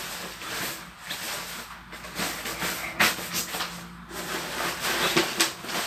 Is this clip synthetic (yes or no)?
no